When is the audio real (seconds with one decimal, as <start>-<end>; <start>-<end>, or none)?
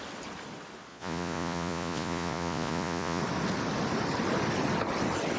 0.0-0.9; 3.2-5.4